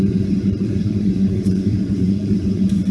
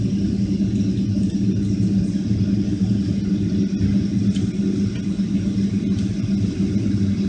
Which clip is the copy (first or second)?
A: first